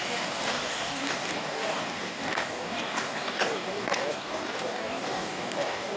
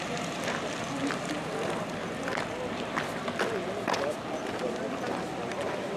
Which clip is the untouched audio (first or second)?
second